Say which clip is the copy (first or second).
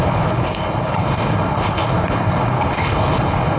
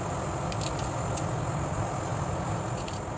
first